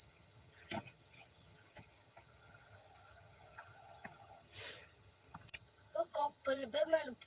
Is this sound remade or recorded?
remade